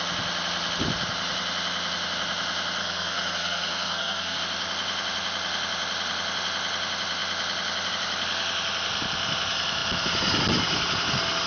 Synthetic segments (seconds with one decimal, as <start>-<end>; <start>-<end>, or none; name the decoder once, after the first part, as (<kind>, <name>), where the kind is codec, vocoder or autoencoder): 2.8-4.4 (codec, SNAC)